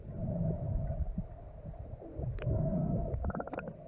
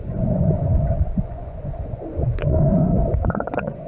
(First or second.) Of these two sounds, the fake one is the second